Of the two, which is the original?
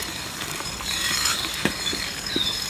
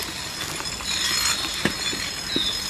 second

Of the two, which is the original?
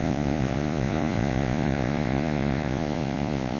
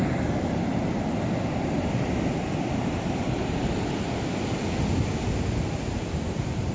second